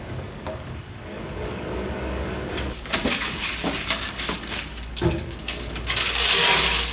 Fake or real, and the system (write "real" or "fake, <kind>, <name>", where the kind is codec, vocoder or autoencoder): fake, codec, DAC